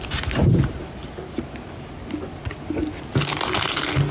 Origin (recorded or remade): recorded